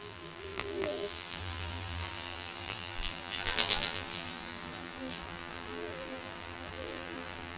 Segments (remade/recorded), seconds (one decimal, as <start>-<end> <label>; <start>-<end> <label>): 0.0-7.6 remade